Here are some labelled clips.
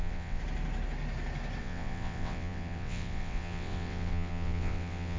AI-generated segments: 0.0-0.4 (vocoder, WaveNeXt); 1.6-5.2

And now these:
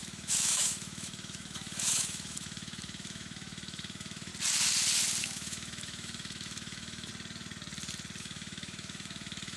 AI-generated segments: 0.0-4.3 (autoencoder, DAC-VAE); 5.2-7.1; 8.2-9.6

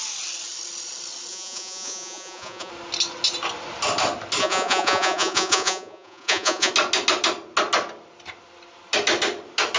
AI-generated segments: 1.3-2.7 (vocoder, Vocos); 4.4-6.7